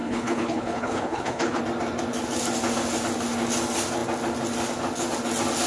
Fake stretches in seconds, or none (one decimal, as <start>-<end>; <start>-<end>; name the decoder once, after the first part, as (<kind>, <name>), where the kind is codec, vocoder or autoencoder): 0.0-1.6 (codec, HILCodec)